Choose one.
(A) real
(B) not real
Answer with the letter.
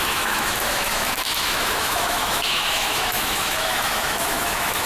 B